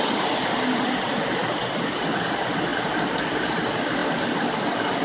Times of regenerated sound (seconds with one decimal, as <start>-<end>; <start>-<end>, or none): 4.0-4.6